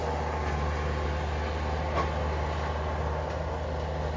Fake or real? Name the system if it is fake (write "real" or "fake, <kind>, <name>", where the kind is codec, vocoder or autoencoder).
real